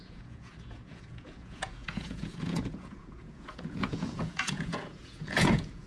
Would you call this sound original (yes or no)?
no